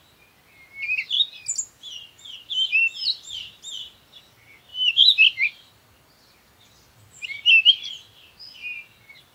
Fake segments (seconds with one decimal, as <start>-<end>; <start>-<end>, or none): 4.7-7.1